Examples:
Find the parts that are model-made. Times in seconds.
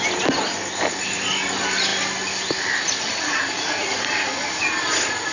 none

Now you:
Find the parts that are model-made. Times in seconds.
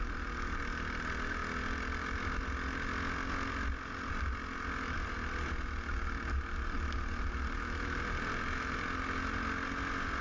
none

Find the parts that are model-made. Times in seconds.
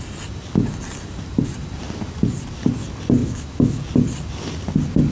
3.2-3.8 (autoencoder, DAC-VAE)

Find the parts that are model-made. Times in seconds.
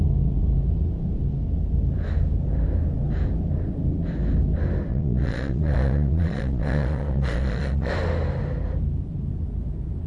4.9-7.9 (vocoder, Vocos)